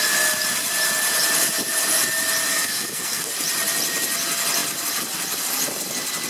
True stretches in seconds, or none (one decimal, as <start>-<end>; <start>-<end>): 0.0-2.5; 3.3-6.3